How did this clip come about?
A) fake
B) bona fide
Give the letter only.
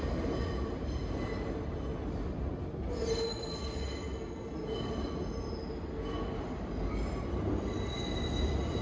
B